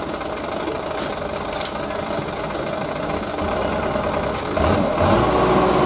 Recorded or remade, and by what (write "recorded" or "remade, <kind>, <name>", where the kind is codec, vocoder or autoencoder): recorded